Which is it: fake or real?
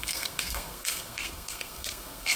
fake